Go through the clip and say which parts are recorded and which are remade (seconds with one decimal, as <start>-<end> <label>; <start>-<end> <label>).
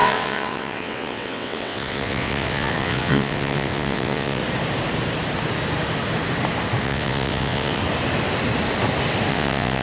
0.0-4.4 remade; 4.4-6.8 recorded; 6.8-7.8 remade; 7.8-9.3 recorded; 9.3-9.8 remade